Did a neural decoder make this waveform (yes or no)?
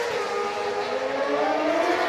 no